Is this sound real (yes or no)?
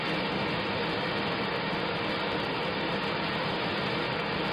yes